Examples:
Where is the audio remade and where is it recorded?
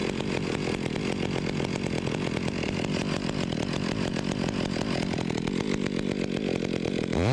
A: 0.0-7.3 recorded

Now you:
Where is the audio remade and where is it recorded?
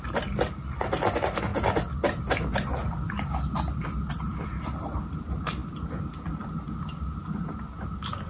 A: 0.0-8.3 recorded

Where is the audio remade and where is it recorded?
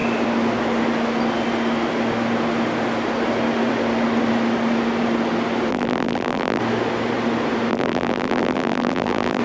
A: 0.0-5.7 recorded; 5.7-6.6 remade; 6.6-7.7 recorded; 7.7-9.4 remade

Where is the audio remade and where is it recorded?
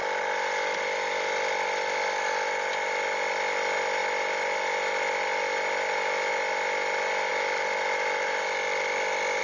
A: 0.0-2.7 remade; 2.7-4.0 recorded; 4.0-6.3 remade; 6.3-7.3 recorded; 7.3-9.4 remade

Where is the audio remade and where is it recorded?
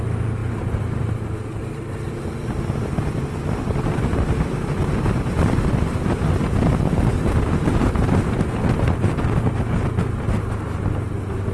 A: 0.0-0.4 recorded; 0.4-1.0 remade; 1.0-1.6 recorded; 1.6-5.6 remade; 5.6-7.7 recorded; 7.7-8.4 remade; 8.4-11.5 recorded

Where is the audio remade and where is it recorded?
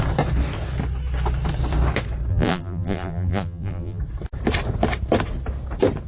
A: 0.0-2.3 recorded; 2.3-4.0 remade; 4.0-6.1 recorded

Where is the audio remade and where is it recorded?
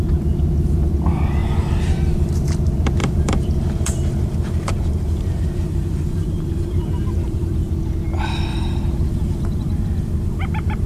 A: 0.0-1.4 recorded; 1.4-2.3 remade; 2.3-3.0 recorded; 3.0-7.7 remade; 7.7-8.5 recorded; 8.5-10.9 remade